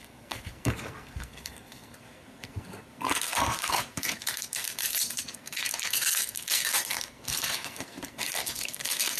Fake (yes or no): yes